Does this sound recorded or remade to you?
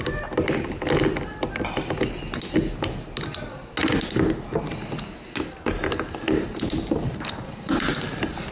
recorded